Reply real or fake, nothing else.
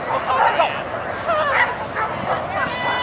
real